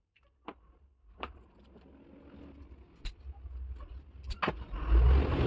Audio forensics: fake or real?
real